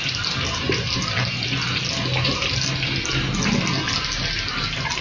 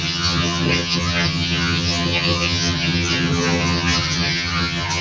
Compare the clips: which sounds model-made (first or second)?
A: second